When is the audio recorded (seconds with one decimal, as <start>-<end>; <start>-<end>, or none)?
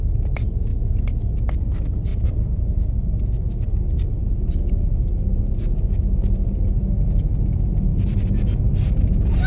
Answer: 0.0-9.5